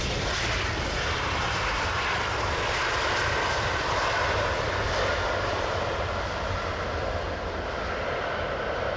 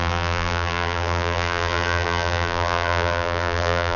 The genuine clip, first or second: first